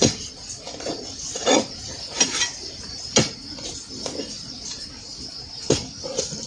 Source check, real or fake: real